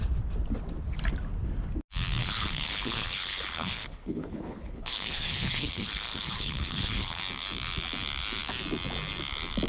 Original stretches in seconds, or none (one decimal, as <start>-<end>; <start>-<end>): 0.0-2.2; 7.2-9.7